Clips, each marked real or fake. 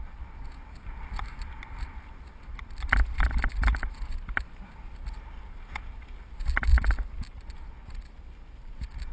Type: real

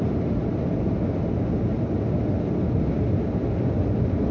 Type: real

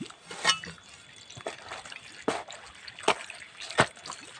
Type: real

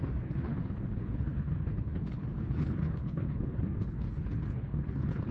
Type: fake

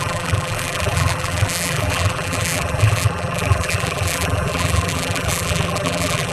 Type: fake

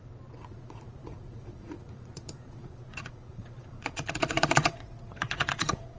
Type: fake